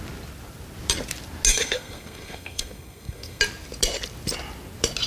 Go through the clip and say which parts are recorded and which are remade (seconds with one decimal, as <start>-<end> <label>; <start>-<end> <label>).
0.0-1.5 recorded; 1.5-3.4 remade; 3.4-5.1 recorded